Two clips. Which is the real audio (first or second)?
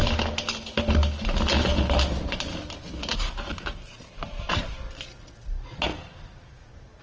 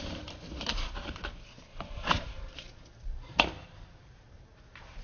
first